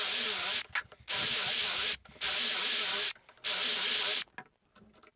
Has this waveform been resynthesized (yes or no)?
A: no